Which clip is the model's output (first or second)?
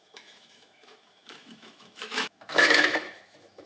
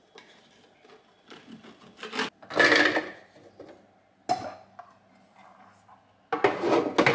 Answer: first